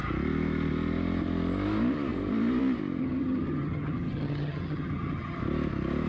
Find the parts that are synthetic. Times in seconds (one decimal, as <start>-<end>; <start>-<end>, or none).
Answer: 3.0-5.4